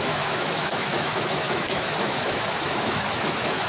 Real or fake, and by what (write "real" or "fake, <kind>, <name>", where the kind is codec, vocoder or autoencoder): fake, autoencoder, DAC-VAE